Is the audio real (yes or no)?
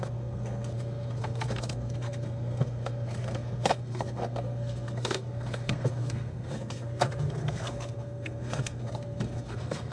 no